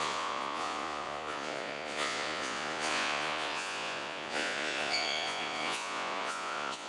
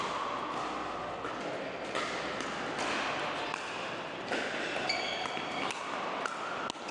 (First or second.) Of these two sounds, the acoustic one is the second